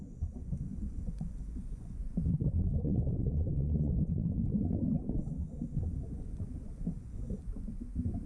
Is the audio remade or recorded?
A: remade